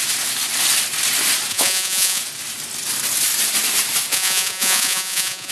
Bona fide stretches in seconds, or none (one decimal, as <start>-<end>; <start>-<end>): 0.0-1.5; 2.2-4.1